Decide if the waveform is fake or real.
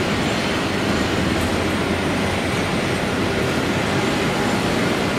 real